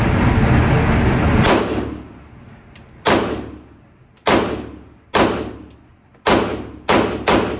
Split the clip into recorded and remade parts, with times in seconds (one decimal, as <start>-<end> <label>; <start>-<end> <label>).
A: 0.0-7.6 recorded